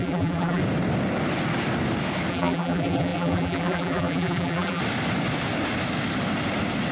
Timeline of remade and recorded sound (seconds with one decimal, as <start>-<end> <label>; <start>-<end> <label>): 0.0-0.6 remade; 0.6-2.3 recorded; 2.3-4.8 remade; 4.8-6.9 recorded